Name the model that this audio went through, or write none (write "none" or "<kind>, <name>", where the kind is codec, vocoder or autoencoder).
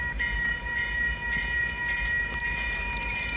vocoder, BigVGAN v2